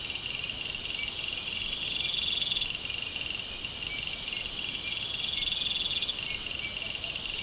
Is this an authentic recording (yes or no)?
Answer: yes